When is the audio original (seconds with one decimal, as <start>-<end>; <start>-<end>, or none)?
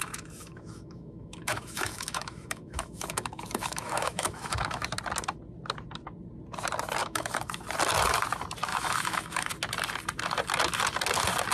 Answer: 4.8-7.0; 7.6-8.7; 9.5-11.5